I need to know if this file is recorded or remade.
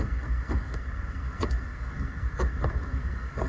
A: remade